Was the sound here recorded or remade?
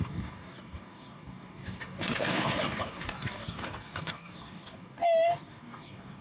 remade